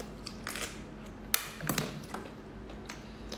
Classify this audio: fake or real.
real